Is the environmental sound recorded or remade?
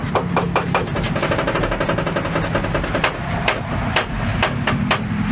recorded